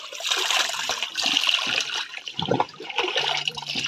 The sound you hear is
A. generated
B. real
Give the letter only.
A